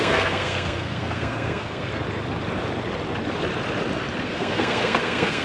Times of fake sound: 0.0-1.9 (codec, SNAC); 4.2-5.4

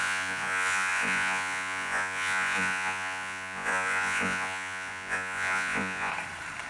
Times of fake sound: 0.0-6.1 (vocoder, Vocos)

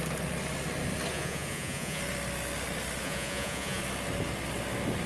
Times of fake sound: 1.1-2.0 (vocoder, Vocos); 3.0-3.8

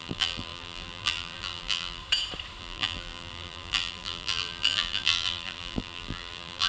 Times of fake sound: 0.0-2.0 (vocoder, BigVGAN v2); 2.6-6.7